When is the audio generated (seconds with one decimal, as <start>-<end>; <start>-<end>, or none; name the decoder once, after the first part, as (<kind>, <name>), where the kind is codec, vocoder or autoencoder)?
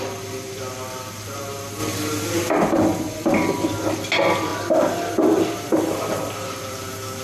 1.8-2.5 (vocoder, BigVGAN v2); 4.5-7.2